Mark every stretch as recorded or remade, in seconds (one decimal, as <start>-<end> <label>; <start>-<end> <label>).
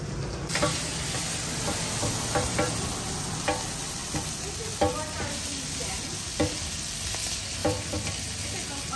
0.0-7.6 recorded; 7.6-8.4 remade; 8.4-9.0 recorded